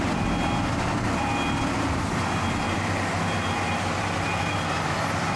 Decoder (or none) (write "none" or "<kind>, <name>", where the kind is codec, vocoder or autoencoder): none